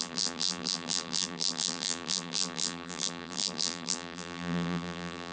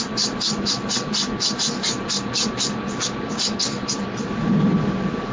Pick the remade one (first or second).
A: first